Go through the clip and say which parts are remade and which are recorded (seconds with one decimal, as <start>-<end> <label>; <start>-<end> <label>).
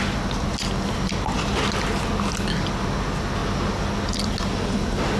0.0-5.2 recorded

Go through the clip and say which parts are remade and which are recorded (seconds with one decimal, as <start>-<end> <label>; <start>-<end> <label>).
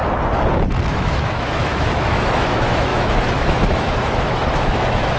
0.0-0.9 recorded; 0.9-5.2 remade